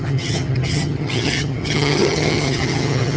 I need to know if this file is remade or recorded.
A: remade